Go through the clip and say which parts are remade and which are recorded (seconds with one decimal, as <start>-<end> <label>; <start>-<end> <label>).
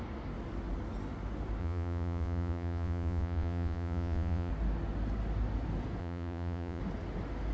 0.0-1.6 recorded; 1.6-4.5 remade; 4.5-6.0 recorded; 6.0-6.8 remade; 6.8-7.5 recorded